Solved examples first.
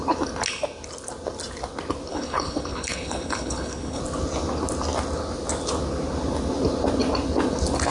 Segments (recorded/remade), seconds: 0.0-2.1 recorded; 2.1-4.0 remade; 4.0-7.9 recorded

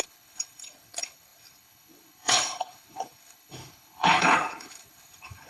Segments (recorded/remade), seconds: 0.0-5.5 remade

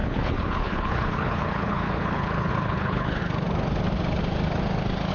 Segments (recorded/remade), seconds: 0.0-3.2 remade; 3.2-5.1 recorded